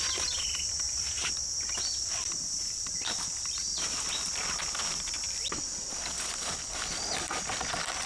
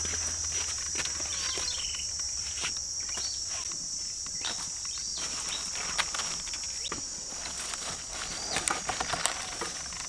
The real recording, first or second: second